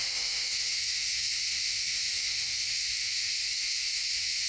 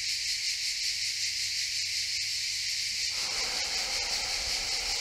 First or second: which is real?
second